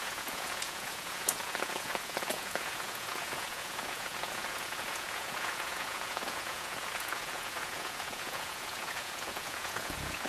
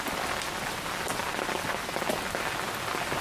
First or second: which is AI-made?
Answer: first